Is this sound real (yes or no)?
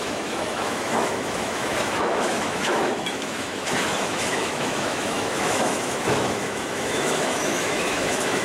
no